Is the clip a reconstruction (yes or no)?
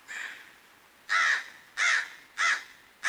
no